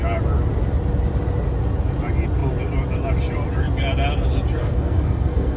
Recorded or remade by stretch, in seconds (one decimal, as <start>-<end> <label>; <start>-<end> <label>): 0.0-4.6 recorded; 4.6-5.6 remade

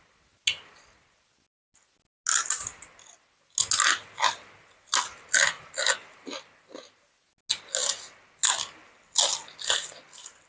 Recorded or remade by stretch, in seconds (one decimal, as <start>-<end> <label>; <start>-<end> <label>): 0.0-10.5 recorded

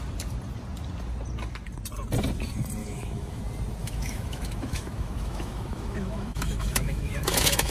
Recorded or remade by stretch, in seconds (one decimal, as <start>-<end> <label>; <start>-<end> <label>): 0.0-2.8 recorded; 2.8-3.4 remade; 3.4-3.8 recorded; 3.8-7.7 remade

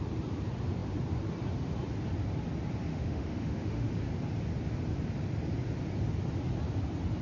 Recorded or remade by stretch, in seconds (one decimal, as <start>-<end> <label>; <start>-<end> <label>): 0.0-2.9 recorded; 2.9-3.9 remade; 3.9-7.2 recorded

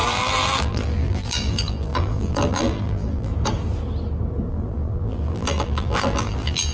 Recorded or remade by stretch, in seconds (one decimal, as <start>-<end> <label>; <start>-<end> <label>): 0.0-3.3 remade; 3.3-4.5 recorded; 4.5-6.7 remade

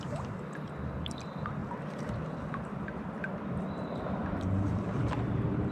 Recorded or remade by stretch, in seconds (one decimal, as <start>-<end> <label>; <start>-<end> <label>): 0.0-5.7 recorded